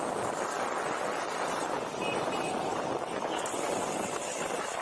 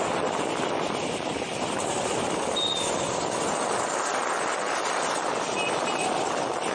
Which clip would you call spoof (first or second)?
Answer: second